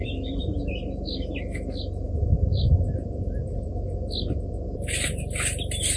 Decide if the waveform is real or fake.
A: real